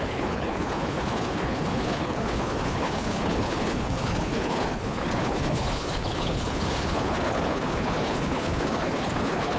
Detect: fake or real fake